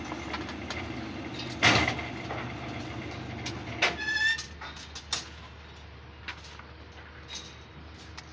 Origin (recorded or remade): recorded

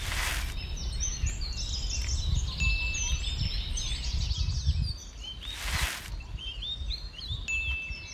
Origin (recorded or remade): recorded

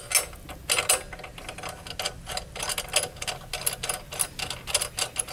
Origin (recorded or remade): recorded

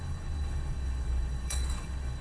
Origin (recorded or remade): remade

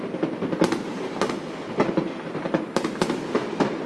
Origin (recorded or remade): recorded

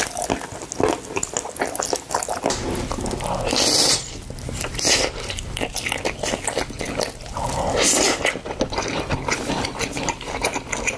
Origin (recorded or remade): recorded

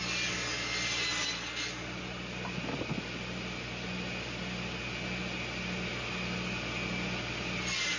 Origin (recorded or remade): recorded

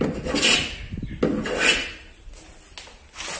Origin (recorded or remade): recorded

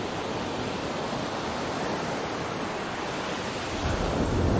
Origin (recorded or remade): remade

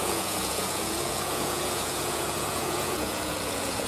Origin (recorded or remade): remade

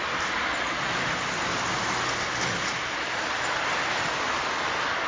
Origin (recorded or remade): recorded